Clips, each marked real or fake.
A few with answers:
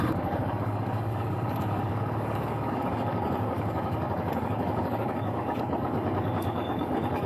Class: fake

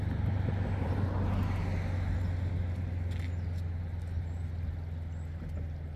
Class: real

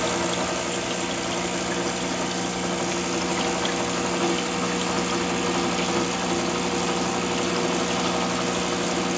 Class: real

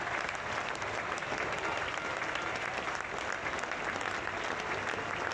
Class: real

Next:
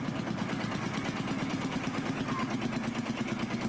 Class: real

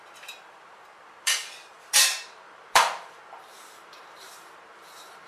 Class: fake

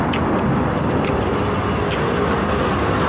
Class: real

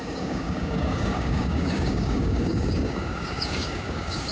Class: fake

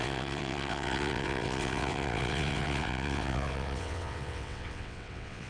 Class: fake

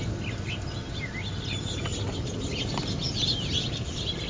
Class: real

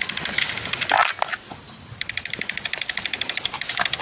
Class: real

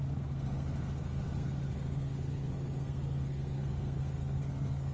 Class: fake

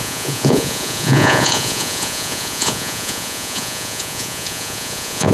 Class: fake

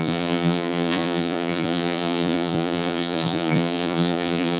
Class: fake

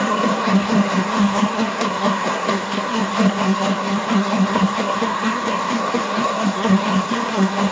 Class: fake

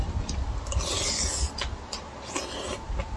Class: real